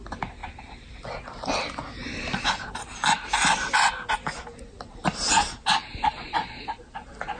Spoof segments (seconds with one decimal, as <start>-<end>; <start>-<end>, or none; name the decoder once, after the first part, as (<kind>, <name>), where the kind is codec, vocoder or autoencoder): none